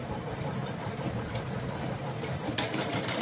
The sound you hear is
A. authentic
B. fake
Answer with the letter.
B